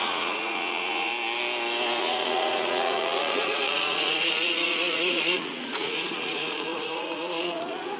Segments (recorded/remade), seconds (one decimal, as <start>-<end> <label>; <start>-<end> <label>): 0.0-1.1 remade; 1.1-2.0 recorded; 2.0-8.0 remade